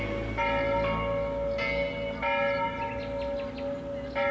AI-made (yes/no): no